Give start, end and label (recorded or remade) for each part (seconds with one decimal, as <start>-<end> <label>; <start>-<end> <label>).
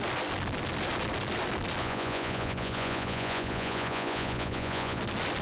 0.0-1.8 recorded; 1.8-5.0 remade; 5.0-5.4 recorded